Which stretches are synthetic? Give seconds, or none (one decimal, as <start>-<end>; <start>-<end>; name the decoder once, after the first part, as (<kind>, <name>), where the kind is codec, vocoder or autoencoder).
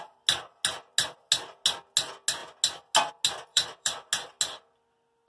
3.5-4.1 (vocoder, BigVGAN v2)